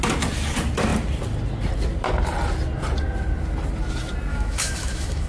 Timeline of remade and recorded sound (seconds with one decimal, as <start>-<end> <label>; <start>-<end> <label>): 0.0-4.3 recorded; 4.3-5.3 remade

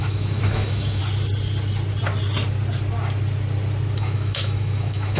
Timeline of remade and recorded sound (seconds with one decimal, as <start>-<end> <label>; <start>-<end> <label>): 0.0-1.0 remade; 1.0-4.0 recorded; 4.0-5.2 remade

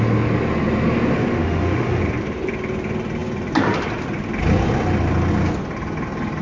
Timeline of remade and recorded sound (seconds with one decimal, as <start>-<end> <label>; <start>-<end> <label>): 0.0-1.4 recorded; 1.4-2.0 remade; 2.0-6.4 recorded

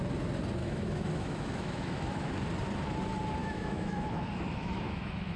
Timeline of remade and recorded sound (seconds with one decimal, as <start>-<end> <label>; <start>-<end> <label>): 0.0-0.6 recorded; 0.6-2.4 remade; 2.4-3.4 recorded; 3.4-5.4 remade

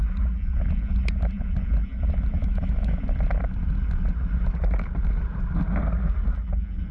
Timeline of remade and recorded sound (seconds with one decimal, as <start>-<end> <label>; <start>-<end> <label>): 0.0-2.4 recorded; 2.4-3.0 remade; 3.0-6.9 recorded

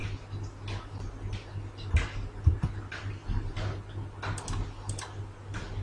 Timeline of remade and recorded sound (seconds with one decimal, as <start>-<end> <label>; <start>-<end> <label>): 0.0-5.8 recorded